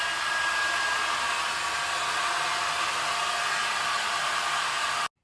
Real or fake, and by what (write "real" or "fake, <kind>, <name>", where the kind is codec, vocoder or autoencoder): real